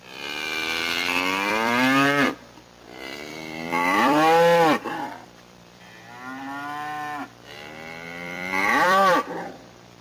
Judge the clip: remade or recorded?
remade